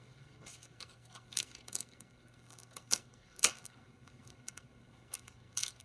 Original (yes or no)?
no